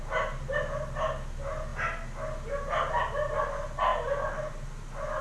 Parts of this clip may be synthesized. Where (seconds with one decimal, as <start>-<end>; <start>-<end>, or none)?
none